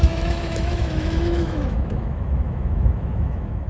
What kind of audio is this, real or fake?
fake